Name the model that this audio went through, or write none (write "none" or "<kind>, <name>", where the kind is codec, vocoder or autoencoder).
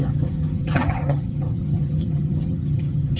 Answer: vocoder, HiFi-GAN